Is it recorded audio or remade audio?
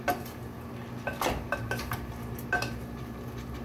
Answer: recorded